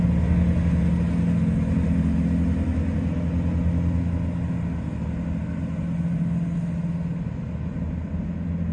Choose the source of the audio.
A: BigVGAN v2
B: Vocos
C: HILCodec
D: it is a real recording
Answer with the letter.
D